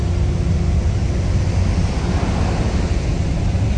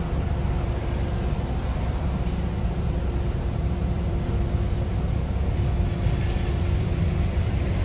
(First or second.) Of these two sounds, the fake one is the second